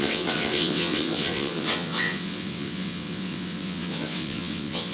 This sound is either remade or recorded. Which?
remade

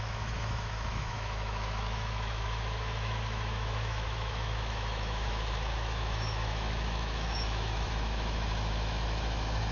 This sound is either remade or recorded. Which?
remade